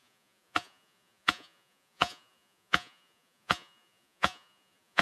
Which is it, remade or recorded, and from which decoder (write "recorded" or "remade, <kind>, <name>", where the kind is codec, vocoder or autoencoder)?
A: remade, vocoder, Vocos